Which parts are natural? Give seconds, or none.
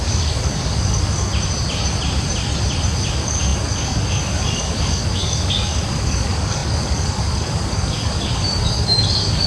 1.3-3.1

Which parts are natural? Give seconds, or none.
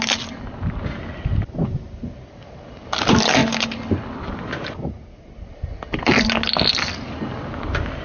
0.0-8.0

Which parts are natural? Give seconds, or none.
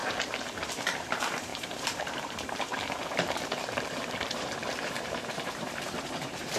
0.0-0.7